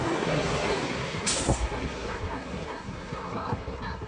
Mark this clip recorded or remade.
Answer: remade